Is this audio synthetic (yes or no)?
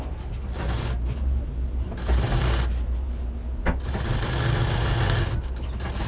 no